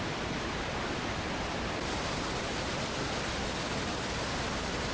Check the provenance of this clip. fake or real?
fake